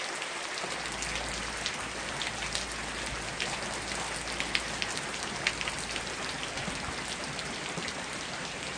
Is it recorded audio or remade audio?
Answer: recorded